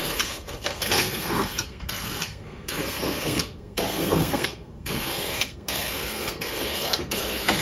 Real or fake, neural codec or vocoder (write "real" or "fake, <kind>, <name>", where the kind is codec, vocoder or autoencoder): fake, codec, SNAC